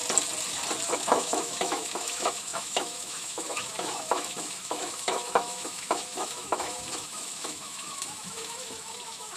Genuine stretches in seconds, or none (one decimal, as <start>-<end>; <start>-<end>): 0.0-0.9